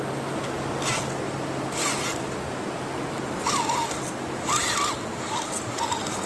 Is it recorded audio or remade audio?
recorded